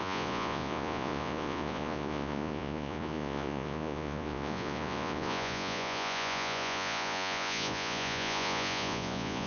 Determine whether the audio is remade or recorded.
remade